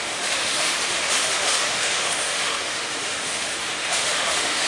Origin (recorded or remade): remade